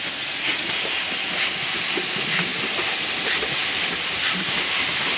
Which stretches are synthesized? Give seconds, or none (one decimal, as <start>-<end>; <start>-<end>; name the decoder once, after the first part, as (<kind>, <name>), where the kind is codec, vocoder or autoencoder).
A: none